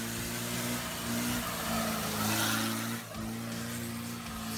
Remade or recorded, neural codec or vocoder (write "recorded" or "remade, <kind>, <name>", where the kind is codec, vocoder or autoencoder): recorded